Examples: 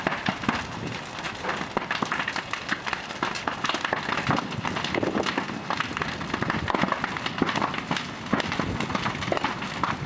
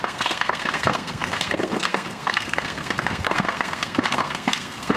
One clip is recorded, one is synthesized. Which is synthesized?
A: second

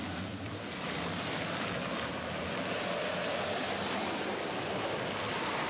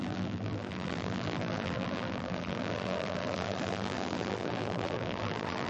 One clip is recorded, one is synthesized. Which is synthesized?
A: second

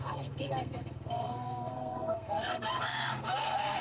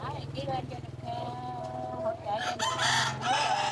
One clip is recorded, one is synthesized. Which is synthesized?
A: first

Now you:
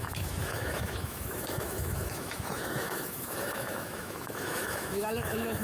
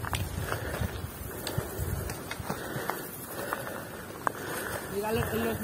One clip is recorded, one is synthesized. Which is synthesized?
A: first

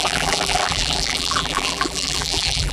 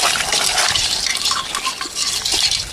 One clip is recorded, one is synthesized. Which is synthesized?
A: first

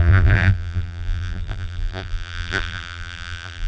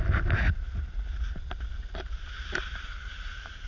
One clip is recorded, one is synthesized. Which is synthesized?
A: first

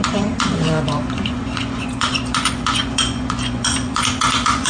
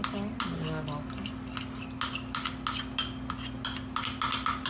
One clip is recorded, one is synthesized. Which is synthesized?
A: first